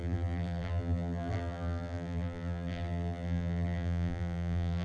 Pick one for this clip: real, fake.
fake